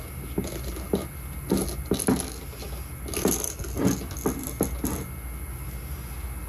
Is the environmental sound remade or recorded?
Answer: recorded